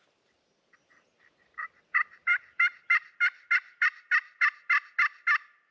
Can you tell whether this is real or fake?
real